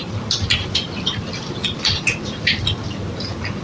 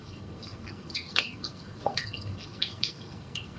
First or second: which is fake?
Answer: second